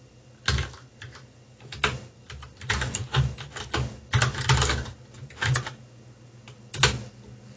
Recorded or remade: recorded